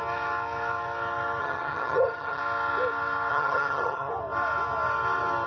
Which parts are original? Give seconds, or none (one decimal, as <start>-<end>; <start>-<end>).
0.0-1.4; 2.4-3.3; 4.1-5.5